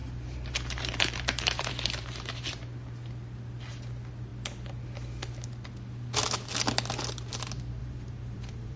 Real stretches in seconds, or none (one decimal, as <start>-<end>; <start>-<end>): 1.7-7.8